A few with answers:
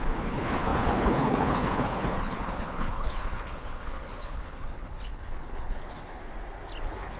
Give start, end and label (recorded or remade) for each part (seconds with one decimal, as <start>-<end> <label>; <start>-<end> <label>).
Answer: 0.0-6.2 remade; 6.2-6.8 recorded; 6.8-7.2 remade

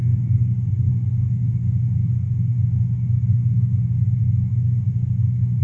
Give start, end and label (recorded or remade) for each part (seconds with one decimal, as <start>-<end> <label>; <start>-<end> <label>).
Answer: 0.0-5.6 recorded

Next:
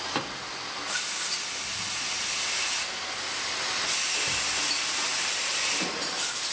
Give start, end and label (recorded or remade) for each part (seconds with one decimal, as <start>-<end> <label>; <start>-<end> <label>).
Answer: 0.0-6.5 recorded

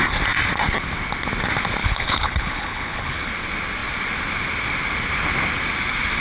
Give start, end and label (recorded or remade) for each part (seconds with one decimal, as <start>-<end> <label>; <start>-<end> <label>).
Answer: 0.0-1.8 recorded; 1.8-3.3 remade; 3.3-6.2 recorded

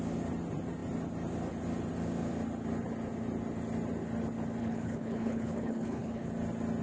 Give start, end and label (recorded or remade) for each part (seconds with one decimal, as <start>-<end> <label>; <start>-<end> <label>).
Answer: 0.0-4.6 recorded; 4.6-6.3 remade; 6.3-6.8 recorded

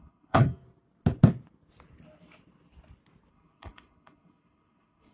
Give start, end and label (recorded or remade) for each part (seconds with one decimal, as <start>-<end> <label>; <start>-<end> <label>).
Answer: 0.0-0.4 remade; 0.4-3.3 recorded; 3.3-5.1 remade